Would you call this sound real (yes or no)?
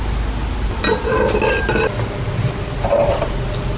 yes